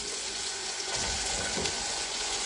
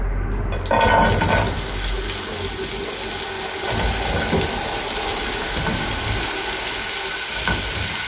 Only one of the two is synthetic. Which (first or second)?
first